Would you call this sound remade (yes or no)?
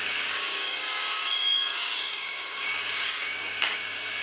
yes